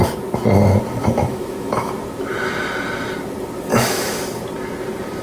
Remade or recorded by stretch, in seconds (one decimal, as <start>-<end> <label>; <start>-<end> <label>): 0.0-1.0 recorded; 1.0-1.9 remade; 1.9-3.7 recorded; 3.7-4.2 remade; 4.2-5.2 recorded